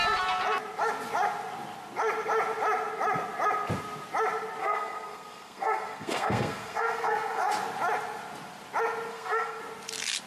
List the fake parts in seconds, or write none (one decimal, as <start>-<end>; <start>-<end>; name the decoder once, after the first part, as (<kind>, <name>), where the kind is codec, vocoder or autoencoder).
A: 4.6-7.5 (codec, SNAC); 9.1-9.6

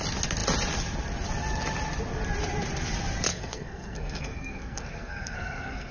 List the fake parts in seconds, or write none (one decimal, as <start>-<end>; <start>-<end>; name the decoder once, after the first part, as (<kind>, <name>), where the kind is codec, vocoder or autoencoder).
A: 3.3-5.9 (codec, SNAC)

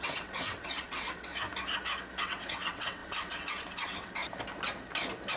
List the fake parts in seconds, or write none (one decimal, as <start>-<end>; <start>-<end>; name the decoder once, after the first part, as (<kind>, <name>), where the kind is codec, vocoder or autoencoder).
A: 0.0-1.3 (vocoder, WaveNeXt); 2.2-4.2

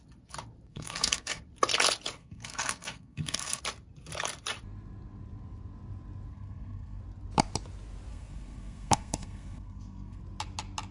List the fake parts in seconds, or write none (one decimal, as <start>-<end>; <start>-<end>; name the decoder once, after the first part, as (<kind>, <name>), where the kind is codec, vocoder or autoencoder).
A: 0.7-1.4 (codec, SNAC); 2.2-3.6; 6.3-7.0; 8.1-10.2

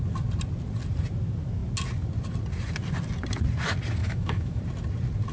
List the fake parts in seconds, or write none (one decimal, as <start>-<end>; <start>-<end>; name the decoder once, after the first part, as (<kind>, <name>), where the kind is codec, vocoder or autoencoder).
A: 4.0-4.6 (autoencoder, DAC-VAE)

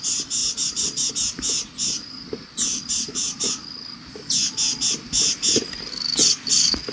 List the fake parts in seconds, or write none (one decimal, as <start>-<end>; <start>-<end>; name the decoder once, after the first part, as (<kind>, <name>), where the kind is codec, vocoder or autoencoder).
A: 0.4-1.1 (vocoder, BigVGAN v2)

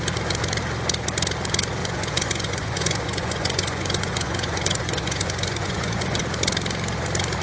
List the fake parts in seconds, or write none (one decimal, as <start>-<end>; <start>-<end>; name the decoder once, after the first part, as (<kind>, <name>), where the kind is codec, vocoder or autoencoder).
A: 1.8-6.2 (vocoder, Vocos)

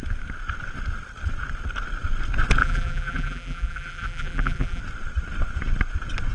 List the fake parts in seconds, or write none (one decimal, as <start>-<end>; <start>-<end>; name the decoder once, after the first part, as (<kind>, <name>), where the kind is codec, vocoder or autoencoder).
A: 2.6-4.8 (vocoder, BigVGAN v2)